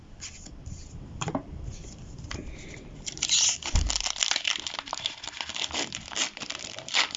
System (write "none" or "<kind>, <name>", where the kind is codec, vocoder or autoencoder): vocoder, BigVGAN v2